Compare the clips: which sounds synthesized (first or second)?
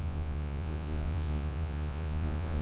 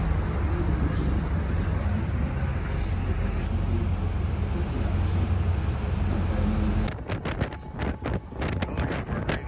first